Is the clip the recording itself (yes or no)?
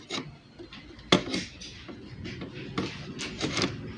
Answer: yes